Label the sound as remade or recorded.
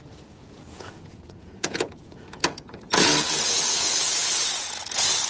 remade